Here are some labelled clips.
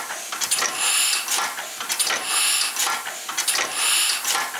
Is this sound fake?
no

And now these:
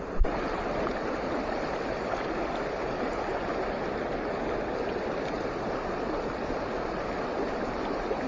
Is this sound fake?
no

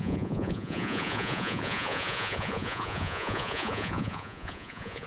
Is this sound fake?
yes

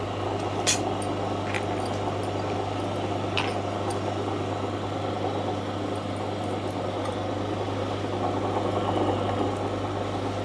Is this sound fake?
no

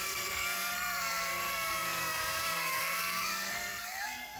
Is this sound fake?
yes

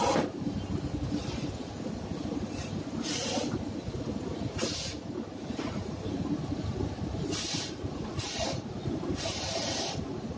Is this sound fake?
no